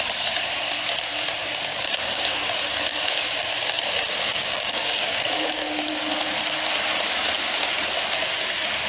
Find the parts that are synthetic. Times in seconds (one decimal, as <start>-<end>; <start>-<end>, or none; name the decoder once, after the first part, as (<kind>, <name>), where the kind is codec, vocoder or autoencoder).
1.7-2.4 (codec, DAC); 2.9-6.0